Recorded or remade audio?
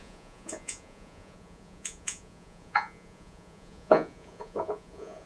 remade